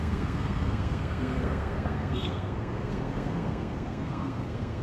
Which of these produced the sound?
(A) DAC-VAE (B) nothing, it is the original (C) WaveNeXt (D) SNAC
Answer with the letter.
D